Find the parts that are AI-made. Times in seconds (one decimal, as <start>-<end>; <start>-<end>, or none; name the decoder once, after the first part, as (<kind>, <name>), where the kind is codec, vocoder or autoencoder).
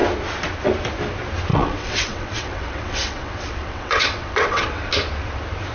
1.5-4.9 (vocoder, WaveNeXt)